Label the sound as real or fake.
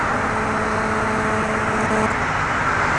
real